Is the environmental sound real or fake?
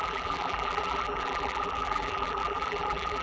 fake